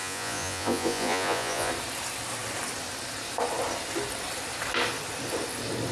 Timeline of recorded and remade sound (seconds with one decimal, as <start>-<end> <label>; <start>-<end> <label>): 0.0-1.7 remade; 1.7-5.9 recorded